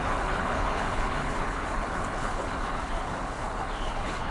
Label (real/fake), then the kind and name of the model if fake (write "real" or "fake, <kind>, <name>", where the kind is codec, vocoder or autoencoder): fake, codec, HILCodec